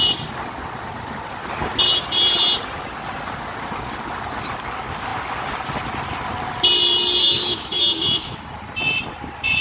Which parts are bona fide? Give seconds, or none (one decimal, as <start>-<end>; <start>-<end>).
0.0-7.2; 8.4-9.6